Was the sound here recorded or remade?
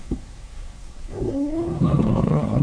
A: remade